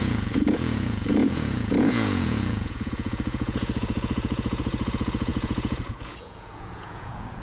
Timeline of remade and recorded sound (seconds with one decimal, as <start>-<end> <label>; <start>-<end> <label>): 0.0-7.4 remade